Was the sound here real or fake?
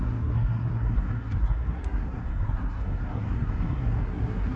fake